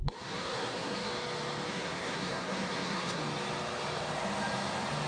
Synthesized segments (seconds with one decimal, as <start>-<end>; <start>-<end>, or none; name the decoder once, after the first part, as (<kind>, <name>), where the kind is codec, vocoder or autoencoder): 0.0-1.1 (codec, SNAC); 1.7-3.2